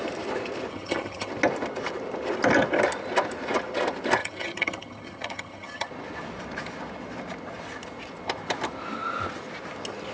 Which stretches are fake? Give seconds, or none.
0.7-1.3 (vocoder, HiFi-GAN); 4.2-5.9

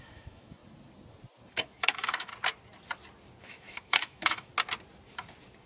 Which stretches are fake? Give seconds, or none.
0.0-0.6 (autoencoder, DAC-VAE); 1.5-2.3; 3.4-4.5

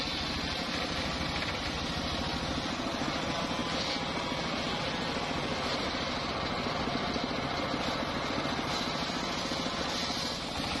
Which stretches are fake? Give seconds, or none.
none

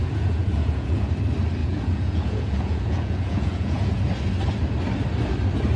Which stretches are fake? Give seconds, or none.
0.0-1.1 (vocoder, Vocos); 1.6-4.1

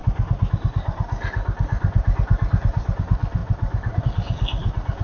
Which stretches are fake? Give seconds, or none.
none

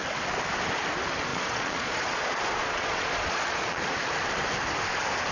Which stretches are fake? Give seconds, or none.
1.3-3.8 (vocoder, Vocos)